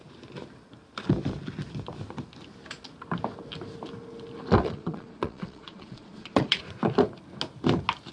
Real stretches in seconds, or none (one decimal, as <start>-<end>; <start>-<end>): 0.0-4.6; 6.6-8.1